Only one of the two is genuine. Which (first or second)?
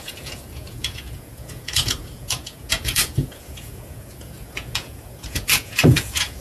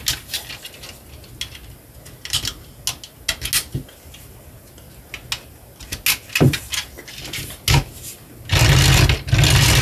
second